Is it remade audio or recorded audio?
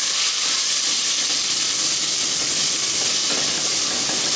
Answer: recorded